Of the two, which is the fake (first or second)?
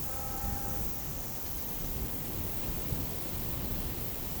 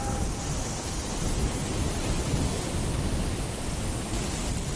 first